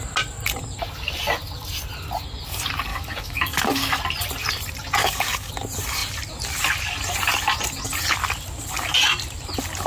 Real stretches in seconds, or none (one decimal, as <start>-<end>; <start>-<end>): 0.0-2.9; 4.0-5.0; 5.5-9.9